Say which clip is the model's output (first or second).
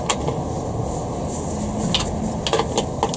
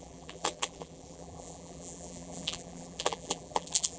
second